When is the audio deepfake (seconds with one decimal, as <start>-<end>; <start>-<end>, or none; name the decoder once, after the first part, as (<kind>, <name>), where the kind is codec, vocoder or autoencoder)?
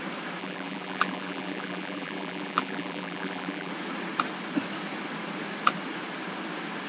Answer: 0.4-3.7 (vocoder, BigVGAN v2)